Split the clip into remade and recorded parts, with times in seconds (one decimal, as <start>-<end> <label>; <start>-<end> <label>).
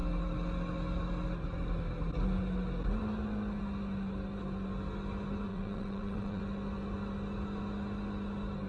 0.0-5.5 recorded; 5.5-6.4 remade; 6.4-8.7 recorded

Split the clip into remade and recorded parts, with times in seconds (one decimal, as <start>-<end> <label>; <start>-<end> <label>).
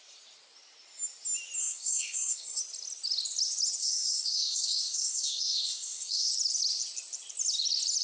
0.0-1.6 recorded; 1.6-2.6 remade; 2.6-3.8 recorded; 3.8-6.3 remade; 6.3-8.0 recorded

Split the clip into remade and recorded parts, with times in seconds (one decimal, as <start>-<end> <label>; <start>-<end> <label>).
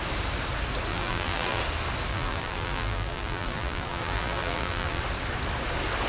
0.0-0.9 recorded; 0.9-1.6 remade; 1.6-2.1 recorded; 2.1-5.0 remade; 5.0-6.1 recorded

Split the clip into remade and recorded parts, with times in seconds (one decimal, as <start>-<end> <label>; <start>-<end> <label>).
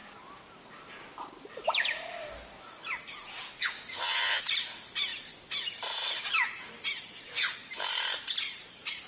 0.0-3.9 recorded; 3.9-4.4 remade; 4.4-9.1 recorded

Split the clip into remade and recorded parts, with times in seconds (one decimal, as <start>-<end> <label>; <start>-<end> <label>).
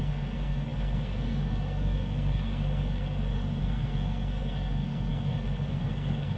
0.0-6.4 remade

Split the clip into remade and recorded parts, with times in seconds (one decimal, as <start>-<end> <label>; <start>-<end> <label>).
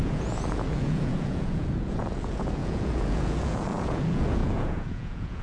0.0-5.4 remade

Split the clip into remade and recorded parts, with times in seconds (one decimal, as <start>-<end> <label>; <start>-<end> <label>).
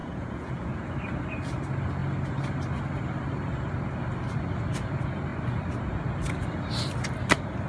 0.0-0.9 remade; 0.9-7.7 recorded